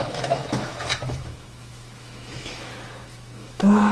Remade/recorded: remade